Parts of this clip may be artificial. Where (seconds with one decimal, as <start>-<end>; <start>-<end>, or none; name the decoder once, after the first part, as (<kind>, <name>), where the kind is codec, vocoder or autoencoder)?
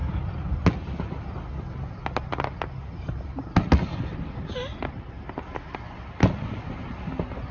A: none